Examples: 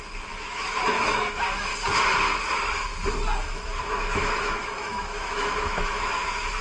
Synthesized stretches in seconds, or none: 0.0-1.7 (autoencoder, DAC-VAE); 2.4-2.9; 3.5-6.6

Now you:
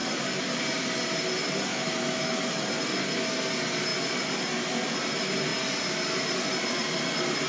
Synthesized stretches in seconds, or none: 1.7-2.4 (autoencoder, DAC-VAE)

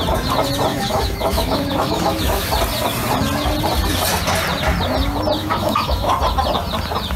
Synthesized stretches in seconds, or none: 0.7-2.5 (autoencoder, DAC-VAE); 5.4-6.1